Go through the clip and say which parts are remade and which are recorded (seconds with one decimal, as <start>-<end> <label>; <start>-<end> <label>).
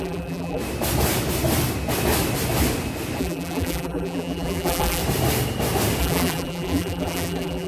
0.0-0.6 remade; 0.6-3.2 recorded; 3.2-5.0 remade; 5.0-6.0 recorded; 6.0-7.7 remade